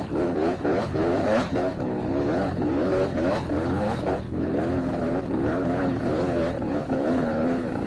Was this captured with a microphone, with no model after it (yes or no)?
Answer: no